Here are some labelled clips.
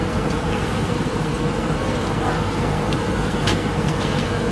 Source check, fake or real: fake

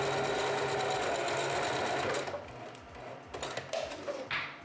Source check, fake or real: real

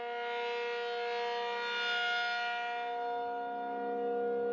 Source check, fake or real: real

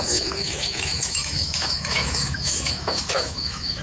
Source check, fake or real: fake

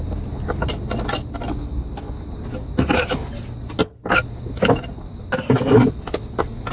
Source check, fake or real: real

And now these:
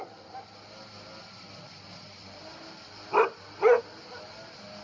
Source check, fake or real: fake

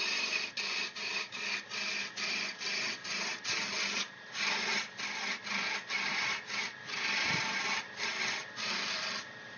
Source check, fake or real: real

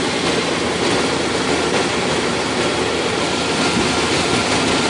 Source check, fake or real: real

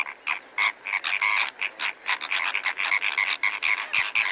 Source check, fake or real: real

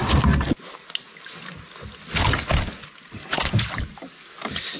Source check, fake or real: real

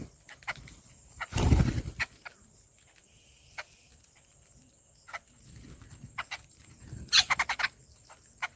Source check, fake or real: real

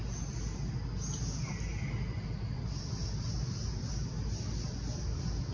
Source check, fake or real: real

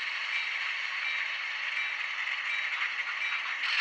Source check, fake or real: real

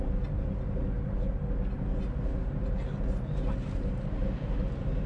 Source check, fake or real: real